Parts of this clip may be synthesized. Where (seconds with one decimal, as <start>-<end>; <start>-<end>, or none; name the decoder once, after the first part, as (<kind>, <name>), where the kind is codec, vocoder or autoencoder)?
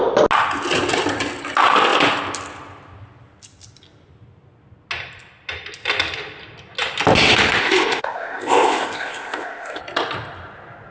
7.6-9.8 (codec, ZipCodec)